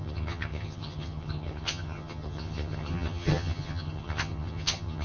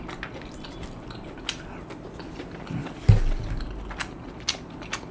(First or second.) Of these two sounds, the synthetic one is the first